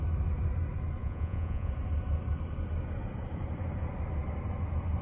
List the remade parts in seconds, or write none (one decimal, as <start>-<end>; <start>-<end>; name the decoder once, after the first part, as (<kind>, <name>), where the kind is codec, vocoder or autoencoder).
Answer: 1.0-1.7 (vocoder, Vocos)